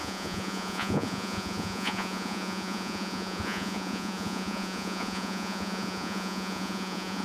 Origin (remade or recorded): remade